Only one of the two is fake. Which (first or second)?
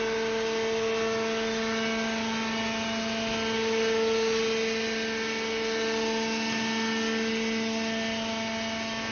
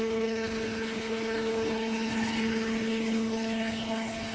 second